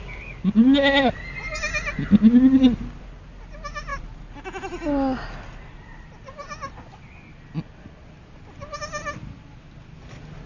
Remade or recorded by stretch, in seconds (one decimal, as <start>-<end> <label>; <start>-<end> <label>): 0.0-10.5 recorded